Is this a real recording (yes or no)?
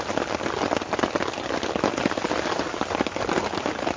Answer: yes